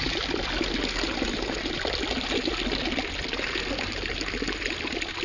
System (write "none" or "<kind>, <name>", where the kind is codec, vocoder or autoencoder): none